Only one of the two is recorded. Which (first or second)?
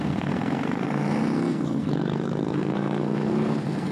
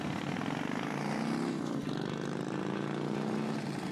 second